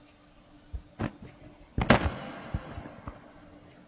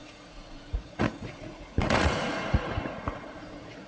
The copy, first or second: second